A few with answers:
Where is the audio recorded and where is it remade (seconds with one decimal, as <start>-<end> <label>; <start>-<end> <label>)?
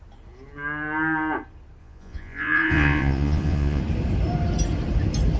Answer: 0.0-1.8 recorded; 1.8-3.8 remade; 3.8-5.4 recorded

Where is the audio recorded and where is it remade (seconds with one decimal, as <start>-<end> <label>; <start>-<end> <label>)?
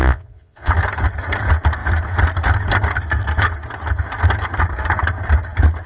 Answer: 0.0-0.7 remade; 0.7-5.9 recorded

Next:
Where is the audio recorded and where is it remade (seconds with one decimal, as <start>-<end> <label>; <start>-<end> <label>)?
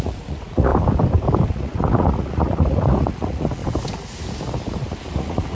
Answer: 0.0-0.7 remade; 0.7-1.5 recorded; 1.5-3.6 remade; 3.6-5.0 recorded; 5.0-5.5 remade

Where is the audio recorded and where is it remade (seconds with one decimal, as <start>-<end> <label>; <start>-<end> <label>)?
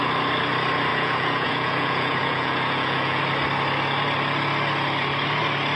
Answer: 0.0-0.9 recorded; 0.9-3.2 remade; 3.2-5.8 recorded